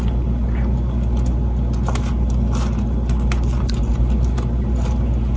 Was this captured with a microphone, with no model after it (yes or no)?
yes